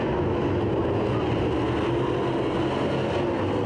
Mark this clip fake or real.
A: real